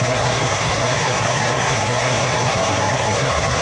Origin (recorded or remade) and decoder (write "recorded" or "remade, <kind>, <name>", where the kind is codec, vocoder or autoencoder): remade, codec, SNAC